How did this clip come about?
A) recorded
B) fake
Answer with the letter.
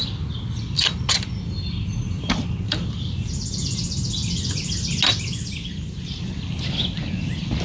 A